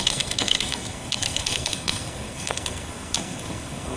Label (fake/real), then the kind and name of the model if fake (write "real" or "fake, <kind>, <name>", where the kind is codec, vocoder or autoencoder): fake, codec, SNAC